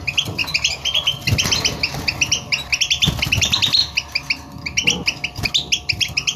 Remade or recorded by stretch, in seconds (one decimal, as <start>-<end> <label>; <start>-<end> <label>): 0.0-6.4 recorded